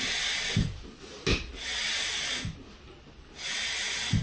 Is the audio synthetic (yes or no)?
no